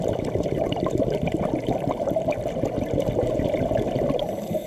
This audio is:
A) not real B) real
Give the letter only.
A